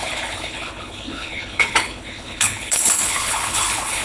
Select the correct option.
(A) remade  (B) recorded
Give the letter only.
A